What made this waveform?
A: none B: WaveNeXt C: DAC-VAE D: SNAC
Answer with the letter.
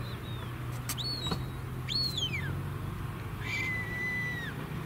A